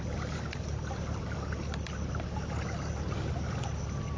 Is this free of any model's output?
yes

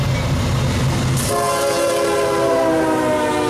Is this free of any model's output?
yes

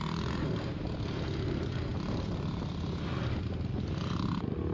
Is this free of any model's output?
yes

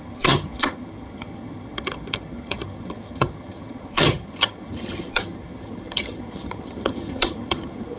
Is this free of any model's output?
no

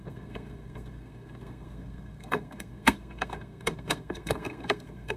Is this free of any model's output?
no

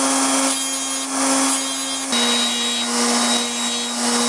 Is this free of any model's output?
yes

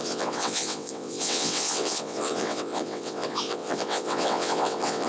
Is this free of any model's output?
no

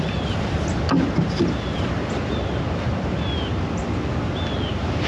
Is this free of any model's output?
yes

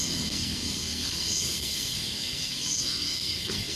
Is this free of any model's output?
no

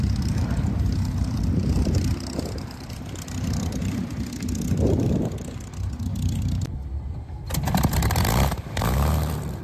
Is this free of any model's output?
no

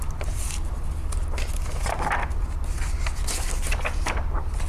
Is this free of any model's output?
yes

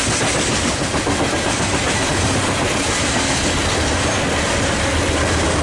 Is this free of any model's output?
yes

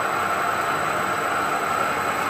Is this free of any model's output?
yes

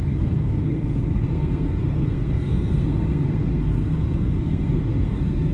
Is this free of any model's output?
no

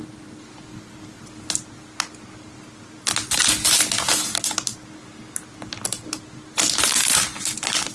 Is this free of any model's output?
yes